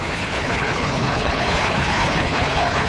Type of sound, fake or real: fake